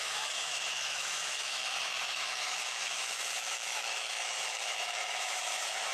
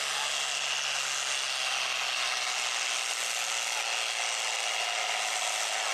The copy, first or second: first